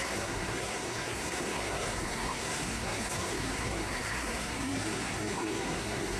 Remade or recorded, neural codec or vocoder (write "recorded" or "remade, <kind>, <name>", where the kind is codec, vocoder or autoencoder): remade, codec, SNAC